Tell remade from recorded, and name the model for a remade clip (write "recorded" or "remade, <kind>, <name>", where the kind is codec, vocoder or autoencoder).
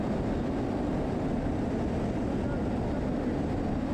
recorded